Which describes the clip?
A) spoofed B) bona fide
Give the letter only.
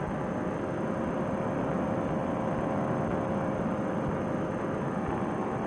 B